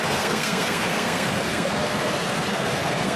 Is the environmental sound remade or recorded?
remade